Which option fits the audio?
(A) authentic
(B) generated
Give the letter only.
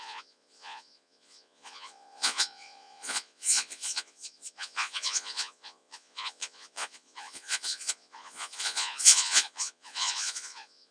B